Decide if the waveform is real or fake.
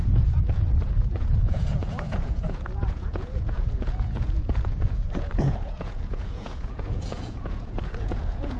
fake